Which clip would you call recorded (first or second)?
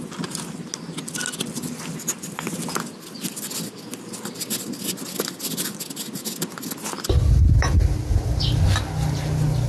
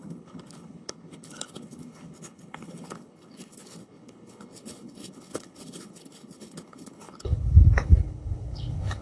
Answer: first